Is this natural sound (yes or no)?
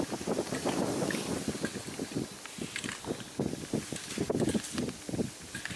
yes